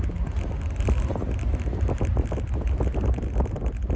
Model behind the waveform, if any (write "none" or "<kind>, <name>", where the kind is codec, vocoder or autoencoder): none